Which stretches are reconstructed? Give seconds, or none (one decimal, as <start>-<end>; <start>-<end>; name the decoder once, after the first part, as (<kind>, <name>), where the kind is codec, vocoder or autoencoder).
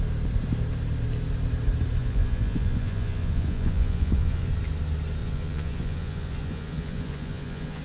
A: 2.0-4.5 (vocoder, Vocos); 5.2-7.8